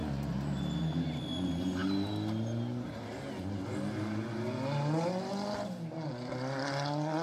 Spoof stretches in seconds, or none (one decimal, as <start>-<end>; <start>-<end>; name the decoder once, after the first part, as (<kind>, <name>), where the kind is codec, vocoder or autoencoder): none